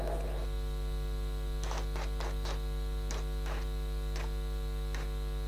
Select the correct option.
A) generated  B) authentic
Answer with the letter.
B